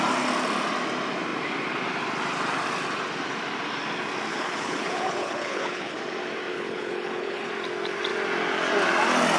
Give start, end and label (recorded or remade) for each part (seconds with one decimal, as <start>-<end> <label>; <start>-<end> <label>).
0.0-4.3 recorded; 4.3-6.0 remade; 6.0-6.5 recorded; 6.5-7.5 remade; 7.5-9.4 recorded